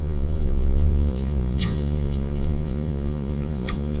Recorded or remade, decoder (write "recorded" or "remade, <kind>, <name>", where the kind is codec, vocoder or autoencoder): remade, vocoder, Vocos